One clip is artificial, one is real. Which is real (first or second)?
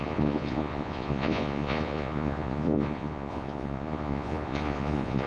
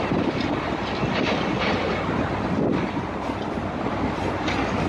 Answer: second